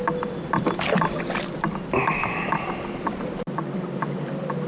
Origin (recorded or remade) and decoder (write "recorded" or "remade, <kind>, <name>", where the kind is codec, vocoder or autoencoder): recorded